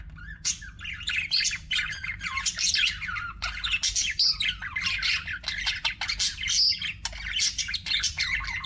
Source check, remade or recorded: recorded